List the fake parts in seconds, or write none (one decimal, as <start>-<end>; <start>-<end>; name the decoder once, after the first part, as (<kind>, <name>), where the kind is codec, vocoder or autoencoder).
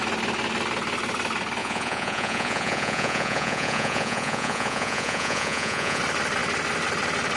1.6-6.0 (vocoder, Vocos)